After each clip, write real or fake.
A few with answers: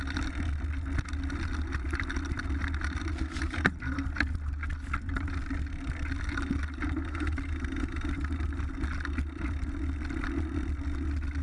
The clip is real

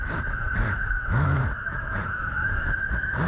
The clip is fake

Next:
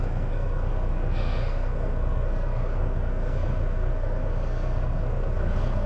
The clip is fake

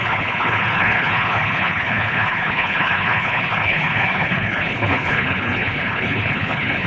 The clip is fake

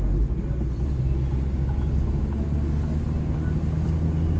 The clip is real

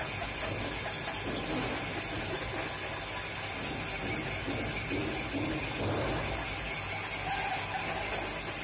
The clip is real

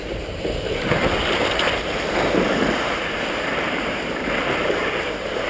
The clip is fake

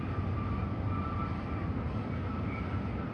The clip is real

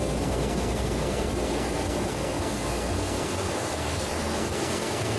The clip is fake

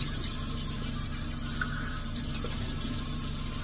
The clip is fake